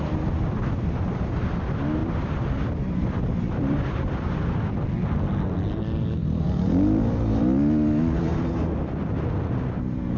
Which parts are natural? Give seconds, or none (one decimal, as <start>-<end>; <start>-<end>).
0.0-2.0; 4.7-6.2; 7.4-10.2

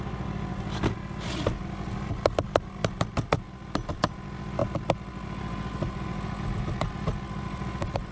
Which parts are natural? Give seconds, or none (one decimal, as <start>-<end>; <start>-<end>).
0.0-8.1